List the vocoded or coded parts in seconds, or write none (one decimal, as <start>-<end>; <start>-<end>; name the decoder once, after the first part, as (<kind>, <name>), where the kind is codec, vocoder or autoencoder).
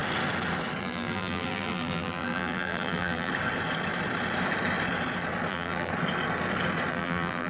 0.8-3.3 (vocoder, BigVGAN v2); 5.5-5.9; 6.9-7.5